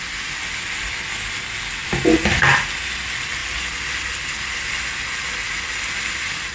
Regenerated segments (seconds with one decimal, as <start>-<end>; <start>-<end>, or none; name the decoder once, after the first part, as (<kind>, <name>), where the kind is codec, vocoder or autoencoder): none

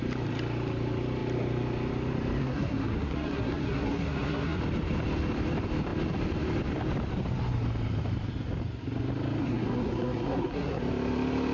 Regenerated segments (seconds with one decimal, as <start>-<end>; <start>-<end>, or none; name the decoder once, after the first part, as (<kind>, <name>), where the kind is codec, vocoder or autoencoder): 2.4-4.6 (codec, SNAC); 9.4-10.8